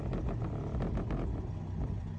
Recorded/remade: recorded